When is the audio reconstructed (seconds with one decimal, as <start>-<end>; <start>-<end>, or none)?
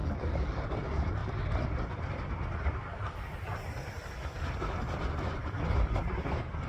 0.0-0.6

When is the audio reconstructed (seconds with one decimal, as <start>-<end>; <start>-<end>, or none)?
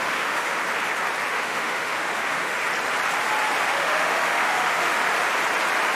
0.0-0.6; 1.3-2.6; 3.7-5.0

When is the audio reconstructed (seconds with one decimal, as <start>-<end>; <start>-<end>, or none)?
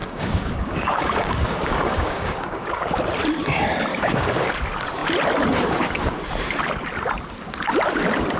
0.0-3.0; 3.9-4.5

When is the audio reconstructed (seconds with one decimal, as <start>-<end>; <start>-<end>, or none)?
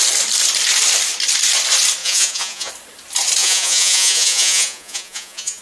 2.0-2.7; 3.4-5.6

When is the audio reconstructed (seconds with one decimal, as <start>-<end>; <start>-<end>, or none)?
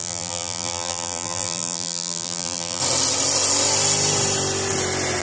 0.0-2.8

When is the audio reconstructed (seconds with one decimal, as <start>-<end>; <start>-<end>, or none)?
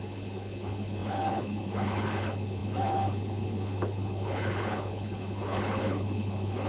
0.0-6.7